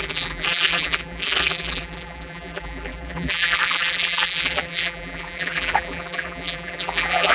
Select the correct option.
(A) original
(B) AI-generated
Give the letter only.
B